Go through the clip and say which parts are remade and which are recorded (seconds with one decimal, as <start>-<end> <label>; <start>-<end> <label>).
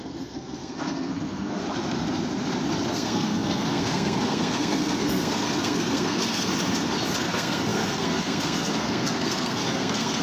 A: 0.0-1.6 remade; 1.6-2.9 recorded; 2.9-6.5 remade; 6.5-7.2 recorded; 7.2-10.2 remade